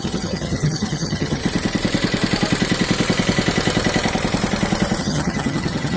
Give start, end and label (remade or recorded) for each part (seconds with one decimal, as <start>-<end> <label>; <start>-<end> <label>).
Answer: 0.0-1.4 remade; 1.4-5.0 recorded; 5.0-6.0 remade